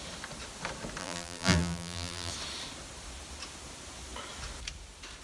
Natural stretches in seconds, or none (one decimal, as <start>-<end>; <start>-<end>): 0.0-1.0; 2.3-5.2